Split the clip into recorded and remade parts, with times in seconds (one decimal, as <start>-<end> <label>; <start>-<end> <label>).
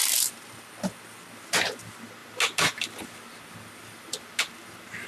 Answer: 0.0-5.1 recorded